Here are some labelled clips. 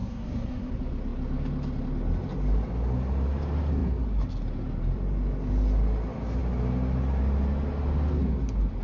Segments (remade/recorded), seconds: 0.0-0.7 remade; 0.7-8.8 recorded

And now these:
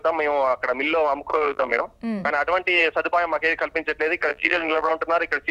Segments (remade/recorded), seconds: 0.0-1.3 recorded; 1.3-1.8 remade; 1.8-4.3 recorded; 4.3-4.9 remade; 4.9-5.5 recorded

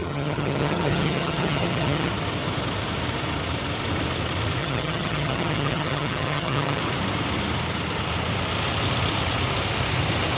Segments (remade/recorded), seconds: 0.0-2.1 remade; 2.1-4.6 recorded; 4.6-6.8 remade; 6.8-10.4 recorded

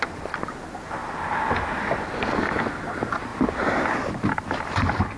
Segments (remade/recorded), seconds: 0.0-5.2 recorded

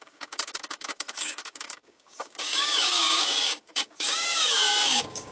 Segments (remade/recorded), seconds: 0.0-5.3 remade